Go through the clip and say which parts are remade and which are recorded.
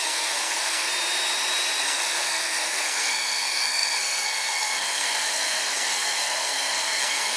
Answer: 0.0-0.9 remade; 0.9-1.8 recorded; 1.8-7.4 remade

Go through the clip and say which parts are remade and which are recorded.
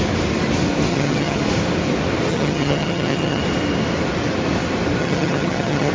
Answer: 0.0-0.9 recorded; 0.9-1.4 remade; 1.4-2.3 recorded; 2.3-3.4 remade; 3.4-5.0 recorded; 5.0-5.9 remade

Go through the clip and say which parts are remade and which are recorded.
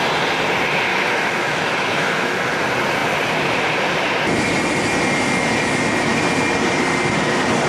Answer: 0.0-0.9 recorded; 0.9-2.5 remade; 2.5-7.7 recorded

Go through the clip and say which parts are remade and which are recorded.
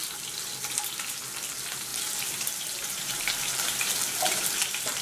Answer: 0.0-1.9 recorded; 1.9-5.0 remade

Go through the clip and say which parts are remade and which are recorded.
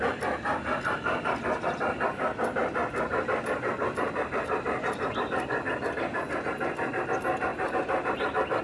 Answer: 0.0-8.6 recorded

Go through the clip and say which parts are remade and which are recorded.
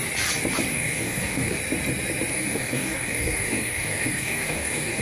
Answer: 0.0-0.7 recorded; 0.7-1.6 remade; 1.6-2.3 recorded; 2.3-5.0 remade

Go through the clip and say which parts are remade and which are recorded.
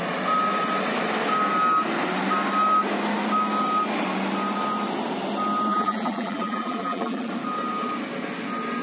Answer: 0.0-5.7 recorded; 5.7-7.3 remade; 7.3-8.8 recorded